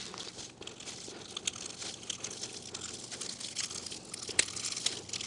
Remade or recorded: recorded